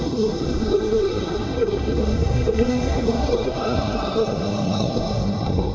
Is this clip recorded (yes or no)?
no